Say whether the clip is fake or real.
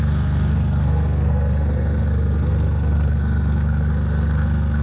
fake